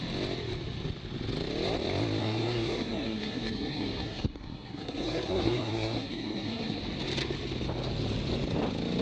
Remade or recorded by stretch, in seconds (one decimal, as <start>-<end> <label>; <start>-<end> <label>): 0.0-2.2 recorded; 2.2-6.8 remade; 6.8-9.0 recorded